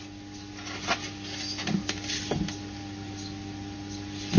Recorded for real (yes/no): yes